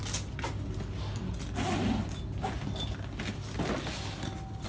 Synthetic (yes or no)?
no